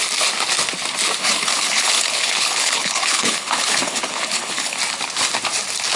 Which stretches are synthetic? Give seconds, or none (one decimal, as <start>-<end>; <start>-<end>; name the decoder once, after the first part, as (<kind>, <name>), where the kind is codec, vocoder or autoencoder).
1.2-4.8 (codec, HILCodec)